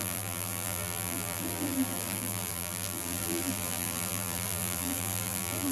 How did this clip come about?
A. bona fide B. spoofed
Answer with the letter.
B